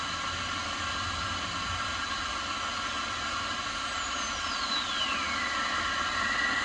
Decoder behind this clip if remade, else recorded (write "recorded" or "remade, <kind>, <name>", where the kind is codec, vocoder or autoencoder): recorded